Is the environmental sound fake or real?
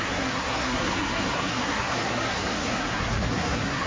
fake